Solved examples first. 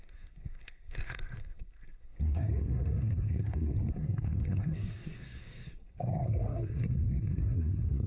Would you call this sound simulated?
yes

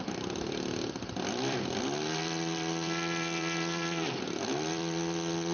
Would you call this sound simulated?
yes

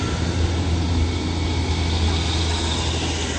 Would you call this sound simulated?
no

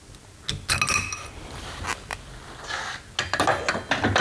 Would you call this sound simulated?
no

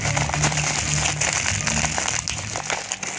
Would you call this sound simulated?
no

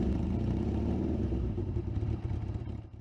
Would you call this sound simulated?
yes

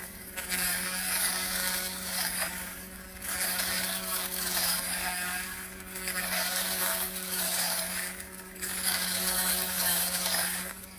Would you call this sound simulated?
yes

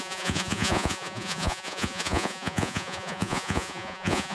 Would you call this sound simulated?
yes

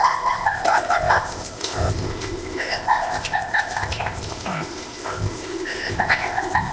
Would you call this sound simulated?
yes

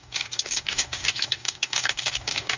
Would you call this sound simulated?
yes